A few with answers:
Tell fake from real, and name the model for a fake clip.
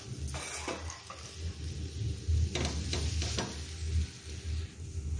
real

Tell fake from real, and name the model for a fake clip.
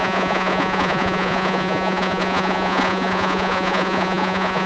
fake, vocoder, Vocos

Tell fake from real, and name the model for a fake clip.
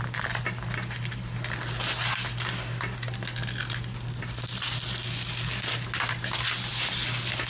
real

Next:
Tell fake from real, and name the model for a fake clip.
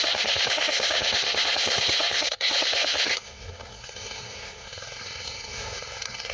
fake, codec, SNAC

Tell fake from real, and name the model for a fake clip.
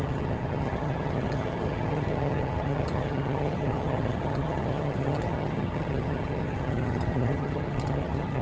fake, vocoder, HiFi-GAN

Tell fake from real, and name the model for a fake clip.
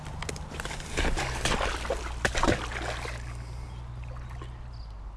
real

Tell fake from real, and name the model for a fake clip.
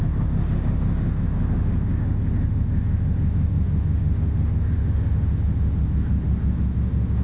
fake, autoencoder, DAC-VAE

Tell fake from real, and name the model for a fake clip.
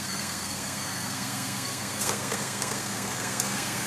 fake, codec, SNAC